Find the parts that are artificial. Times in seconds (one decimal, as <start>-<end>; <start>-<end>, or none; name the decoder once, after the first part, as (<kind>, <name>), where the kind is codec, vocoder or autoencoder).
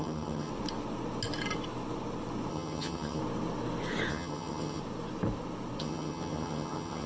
0.0-0.5 (vocoder, HiFi-GAN); 2.5-3.2; 4.1-4.8; 5.8-7.1